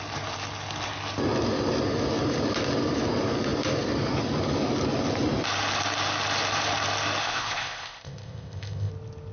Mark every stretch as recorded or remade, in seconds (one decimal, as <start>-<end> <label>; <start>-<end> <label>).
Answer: 0.0-7.2 recorded; 7.2-8.9 remade; 8.9-9.3 recorded